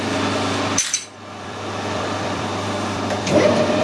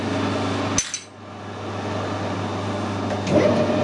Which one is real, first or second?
second